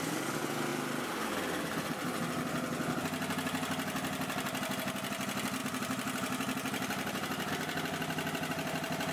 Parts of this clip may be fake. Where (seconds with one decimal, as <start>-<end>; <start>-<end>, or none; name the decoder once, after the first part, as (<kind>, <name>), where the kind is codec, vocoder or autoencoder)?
0.7-1.3 (vocoder, BigVGAN v2); 5.6-7.5